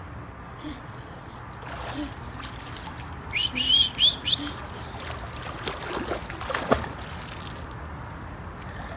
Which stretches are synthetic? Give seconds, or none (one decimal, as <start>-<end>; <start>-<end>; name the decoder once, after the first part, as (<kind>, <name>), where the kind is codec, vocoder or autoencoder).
0.5-1.4 (vocoder, Vocos)